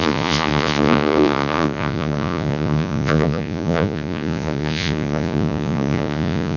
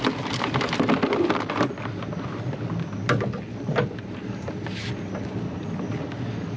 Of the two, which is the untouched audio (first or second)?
second